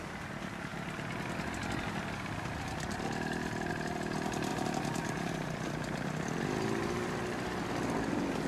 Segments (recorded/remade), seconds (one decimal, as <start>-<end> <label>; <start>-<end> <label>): 0.0-4.5 recorded; 4.5-5.3 remade; 5.3-8.5 recorded